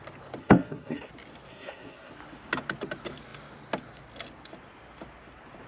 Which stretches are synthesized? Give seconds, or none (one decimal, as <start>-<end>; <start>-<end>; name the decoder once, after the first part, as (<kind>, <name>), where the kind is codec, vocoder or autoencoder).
0.4-1.1 (codec, SNAC); 1.5-2.1